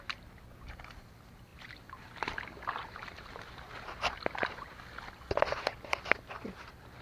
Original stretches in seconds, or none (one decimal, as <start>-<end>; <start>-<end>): 0.0-2.8; 4.7-7.0